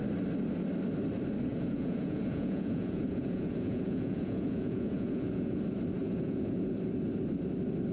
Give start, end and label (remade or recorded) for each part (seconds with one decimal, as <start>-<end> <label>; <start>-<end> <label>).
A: 0.0-1.5 recorded; 1.5-5.6 remade; 5.6-6.0 recorded; 6.0-6.7 remade; 6.7-7.9 recorded